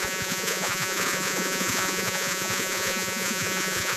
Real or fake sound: fake